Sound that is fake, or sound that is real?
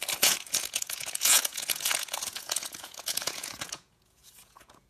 fake